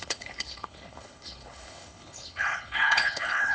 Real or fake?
fake